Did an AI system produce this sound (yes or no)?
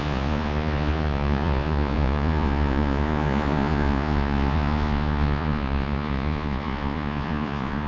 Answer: yes